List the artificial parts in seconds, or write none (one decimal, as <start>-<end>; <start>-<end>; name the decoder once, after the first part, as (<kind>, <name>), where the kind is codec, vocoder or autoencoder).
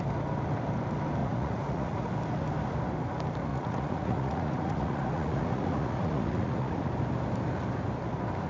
1.2-2.1 (vocoder, Vocos); 3.5-6.9